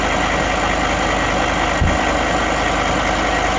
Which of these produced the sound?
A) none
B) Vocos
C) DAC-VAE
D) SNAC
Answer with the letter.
A